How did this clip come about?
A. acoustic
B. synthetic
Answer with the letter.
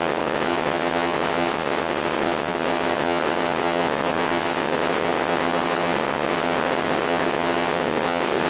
B